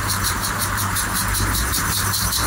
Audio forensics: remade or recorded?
remade